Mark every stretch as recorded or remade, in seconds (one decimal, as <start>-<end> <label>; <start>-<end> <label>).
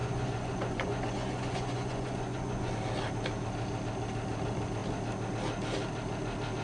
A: 0.0-2.7 remade; 2.7-6.6 recorded